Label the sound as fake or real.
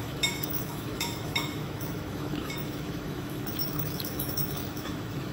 fake